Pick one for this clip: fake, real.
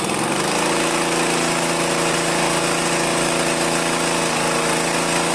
real